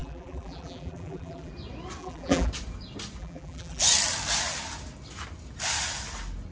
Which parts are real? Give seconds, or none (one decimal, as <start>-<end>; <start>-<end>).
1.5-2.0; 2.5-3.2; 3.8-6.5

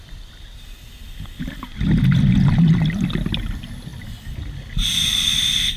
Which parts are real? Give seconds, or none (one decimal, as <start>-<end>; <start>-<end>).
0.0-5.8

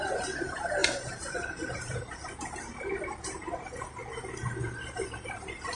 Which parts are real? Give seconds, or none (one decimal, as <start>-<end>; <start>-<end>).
0.0-0.8; 2.9-5.7